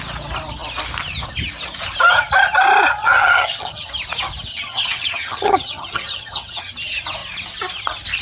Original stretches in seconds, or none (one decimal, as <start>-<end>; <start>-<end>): 0.0-3.0; 3.9-4.5; 6.7-8.2